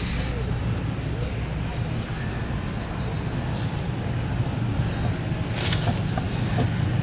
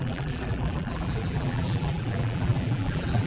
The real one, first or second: first